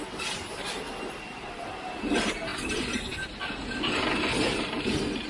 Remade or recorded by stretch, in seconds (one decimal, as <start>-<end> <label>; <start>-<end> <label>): 0.0-5.3 recorded